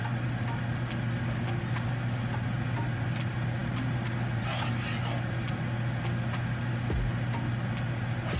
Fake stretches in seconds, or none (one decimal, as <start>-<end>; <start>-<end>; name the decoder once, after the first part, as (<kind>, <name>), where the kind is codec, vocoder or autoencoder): none

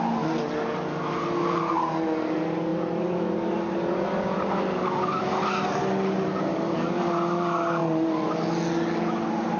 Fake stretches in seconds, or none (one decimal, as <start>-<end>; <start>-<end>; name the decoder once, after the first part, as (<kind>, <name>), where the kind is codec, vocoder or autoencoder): none